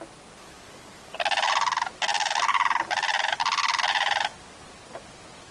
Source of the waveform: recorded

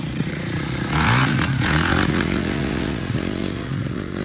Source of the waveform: remade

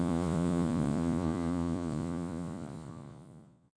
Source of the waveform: remade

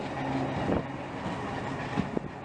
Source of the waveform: recorded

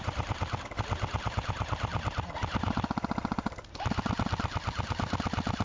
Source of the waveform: recorded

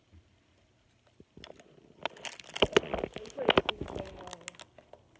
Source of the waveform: recorded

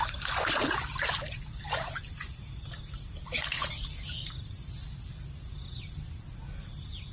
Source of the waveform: recorded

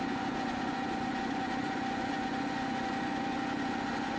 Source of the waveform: remade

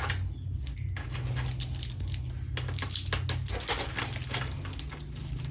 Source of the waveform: recorded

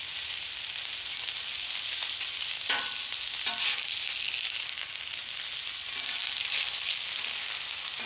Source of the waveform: recorded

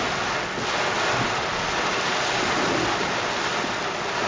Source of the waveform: recorded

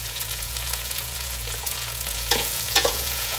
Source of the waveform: remade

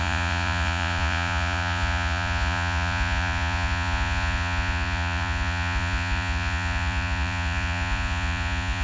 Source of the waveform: remade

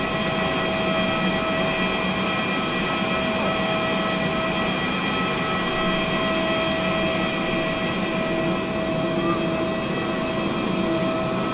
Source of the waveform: recorded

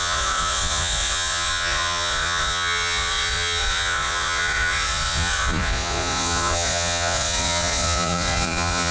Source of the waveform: remade